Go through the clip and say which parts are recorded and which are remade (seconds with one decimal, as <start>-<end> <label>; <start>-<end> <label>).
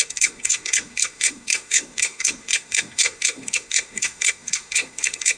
0.0-5.4 remade